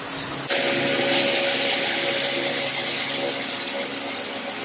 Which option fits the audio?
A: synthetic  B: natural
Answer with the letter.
B